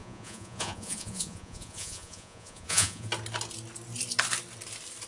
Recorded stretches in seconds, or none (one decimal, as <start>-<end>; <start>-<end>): 3.1-5.1